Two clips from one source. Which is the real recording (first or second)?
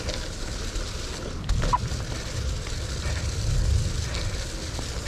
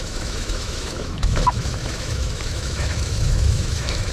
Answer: first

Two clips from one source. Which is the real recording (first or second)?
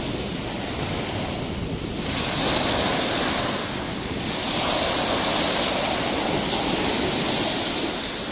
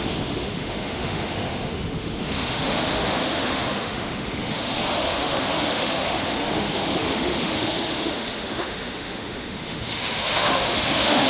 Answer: first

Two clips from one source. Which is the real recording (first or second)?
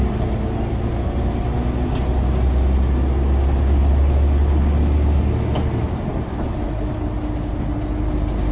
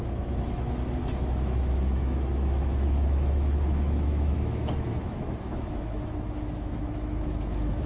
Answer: first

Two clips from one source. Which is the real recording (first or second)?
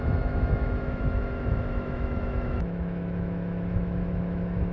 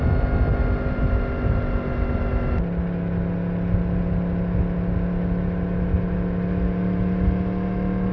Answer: second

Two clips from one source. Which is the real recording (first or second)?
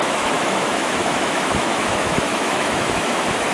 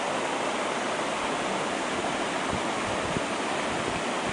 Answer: second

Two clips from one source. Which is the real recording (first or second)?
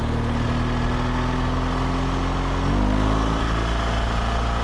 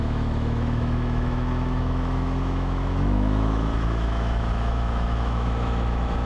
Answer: first